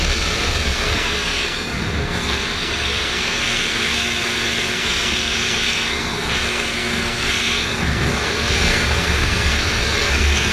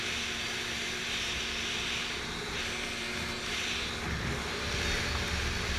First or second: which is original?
second